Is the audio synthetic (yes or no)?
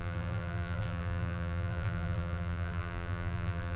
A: yes